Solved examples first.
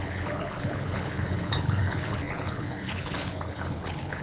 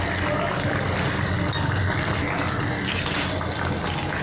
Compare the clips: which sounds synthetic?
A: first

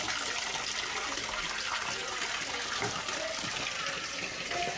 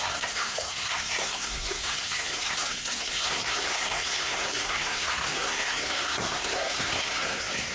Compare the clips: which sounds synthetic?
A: second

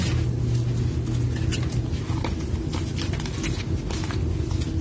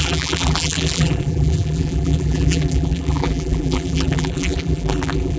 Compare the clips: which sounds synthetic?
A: second